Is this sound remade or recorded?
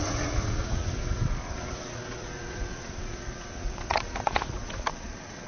remade